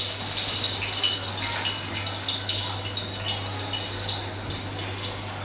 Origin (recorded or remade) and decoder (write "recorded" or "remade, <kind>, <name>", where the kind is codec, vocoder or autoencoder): recorded